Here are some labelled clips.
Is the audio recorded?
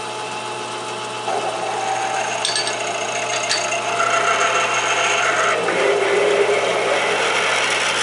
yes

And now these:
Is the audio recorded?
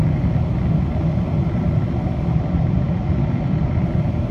yes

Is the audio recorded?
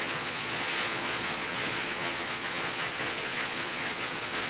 no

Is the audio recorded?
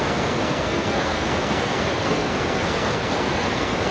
no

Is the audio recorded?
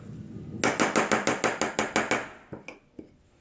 yes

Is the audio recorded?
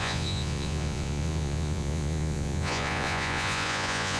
no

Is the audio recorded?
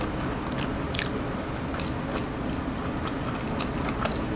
yes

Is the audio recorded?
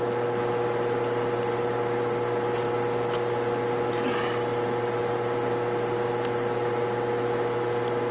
yes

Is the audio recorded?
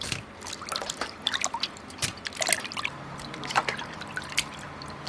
yes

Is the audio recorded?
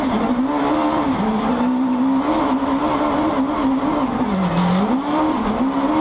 yes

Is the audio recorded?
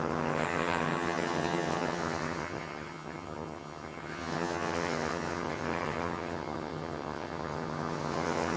no